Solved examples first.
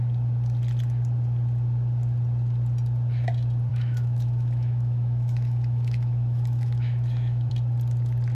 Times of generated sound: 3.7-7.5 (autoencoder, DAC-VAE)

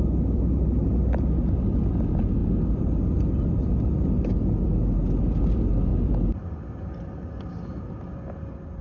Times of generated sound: none

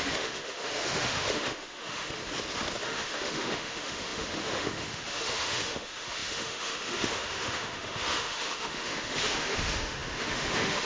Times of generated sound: 0.0-2.2 (autoencoder, DAC-VAE); 2.8-10.9

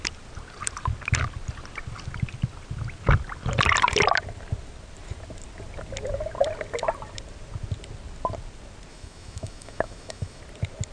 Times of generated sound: 8.9-10.4 (autoencoder, DAC-VAE)

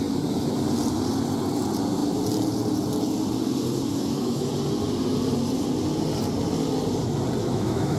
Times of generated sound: 3.9-4.5 (autoencoder, DAC-VAE); 7.4-8.0